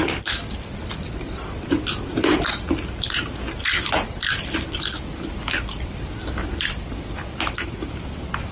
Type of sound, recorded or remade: recorded